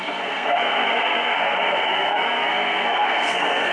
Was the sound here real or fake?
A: fake